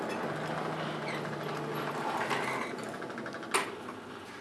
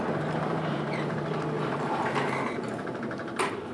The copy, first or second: second